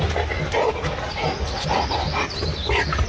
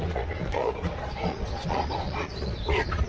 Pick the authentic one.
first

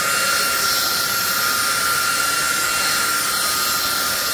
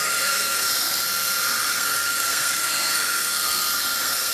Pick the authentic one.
first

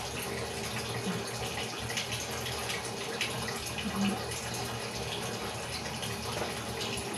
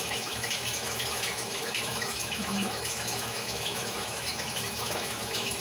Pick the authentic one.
first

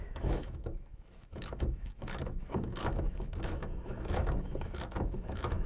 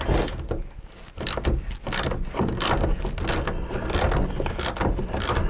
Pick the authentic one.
second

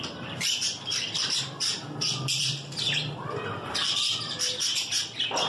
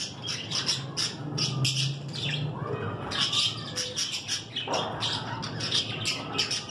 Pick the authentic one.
second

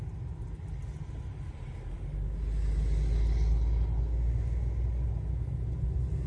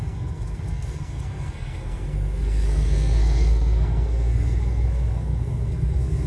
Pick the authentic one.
first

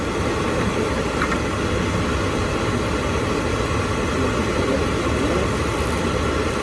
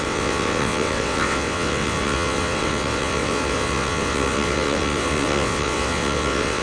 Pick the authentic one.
first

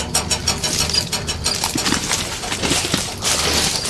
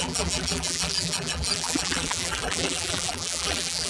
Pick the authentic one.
first